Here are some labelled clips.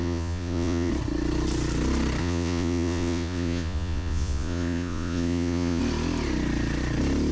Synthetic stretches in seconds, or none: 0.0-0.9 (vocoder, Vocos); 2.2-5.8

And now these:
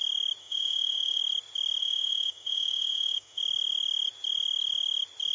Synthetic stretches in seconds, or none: 0.4-1.2 (autoencoder, DAC-VAE); 1.8-3.4

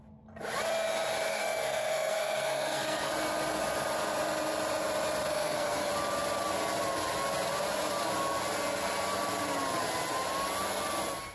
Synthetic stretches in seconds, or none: 1.3-3.1 (codec, SNAC); 5.3-5.9